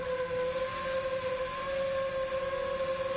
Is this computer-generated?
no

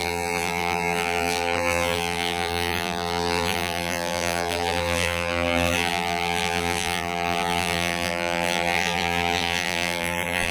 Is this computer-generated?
yes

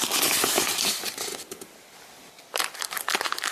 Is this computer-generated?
no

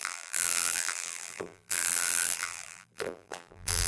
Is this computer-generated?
yes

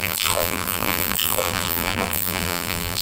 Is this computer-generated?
yes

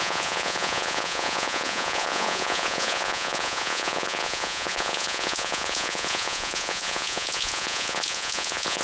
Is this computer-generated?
yes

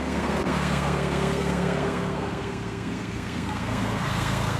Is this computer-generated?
yes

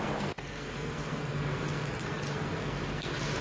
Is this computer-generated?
yes